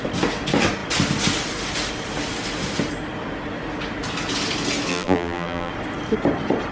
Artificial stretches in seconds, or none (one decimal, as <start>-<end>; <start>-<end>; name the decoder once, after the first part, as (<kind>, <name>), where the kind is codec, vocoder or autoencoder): 4.9-5.7 (vocoder, BigVGAN v2)

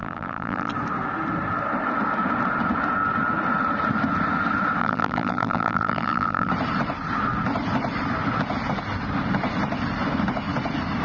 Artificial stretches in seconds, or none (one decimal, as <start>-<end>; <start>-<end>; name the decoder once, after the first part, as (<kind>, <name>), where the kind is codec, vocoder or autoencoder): 0.0-0.7 (vocoder, BigVGAN v2); 4.8-6.5

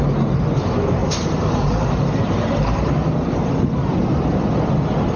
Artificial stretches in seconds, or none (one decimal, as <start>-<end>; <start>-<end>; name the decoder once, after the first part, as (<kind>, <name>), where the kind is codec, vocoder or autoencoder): 1.0-3.5 (vocoder, BigVGAN v2)

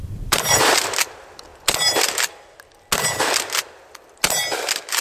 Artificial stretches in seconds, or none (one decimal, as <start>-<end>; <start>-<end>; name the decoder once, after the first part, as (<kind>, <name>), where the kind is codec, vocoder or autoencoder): none

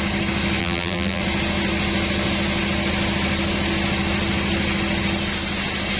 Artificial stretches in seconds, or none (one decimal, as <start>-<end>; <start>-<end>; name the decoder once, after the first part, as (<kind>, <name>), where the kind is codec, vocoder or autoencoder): 0.6-1.2 (vocoder, BigVGAN v2)

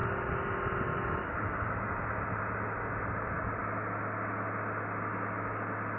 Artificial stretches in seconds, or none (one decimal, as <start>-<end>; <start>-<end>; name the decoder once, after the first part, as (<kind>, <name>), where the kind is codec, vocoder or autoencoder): none

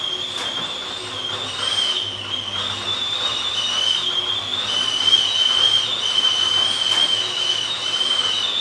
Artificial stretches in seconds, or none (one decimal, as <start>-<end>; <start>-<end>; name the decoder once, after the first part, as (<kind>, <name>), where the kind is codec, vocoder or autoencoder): 2.9-3.8 (vocoder, BigVGAN v2)

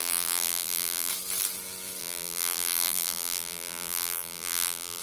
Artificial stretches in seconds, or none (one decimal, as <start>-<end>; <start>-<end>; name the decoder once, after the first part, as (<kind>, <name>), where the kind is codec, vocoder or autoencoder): 0.0-1.1 (vocoder, BigVGAN v2); 2.0-5.0